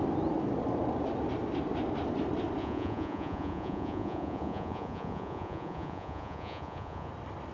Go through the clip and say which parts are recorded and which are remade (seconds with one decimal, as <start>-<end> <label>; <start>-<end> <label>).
0.0-2.6 recorded; 2.6-7.1 remade; 7.1-7.5 recorded